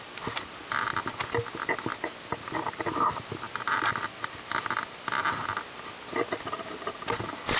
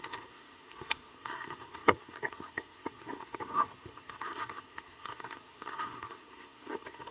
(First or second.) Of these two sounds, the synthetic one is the second